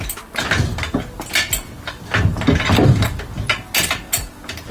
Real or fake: real